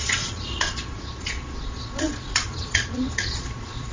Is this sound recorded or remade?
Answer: remade